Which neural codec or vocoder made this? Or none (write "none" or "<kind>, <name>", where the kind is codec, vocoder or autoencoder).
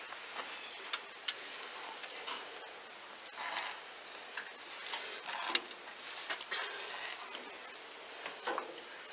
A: none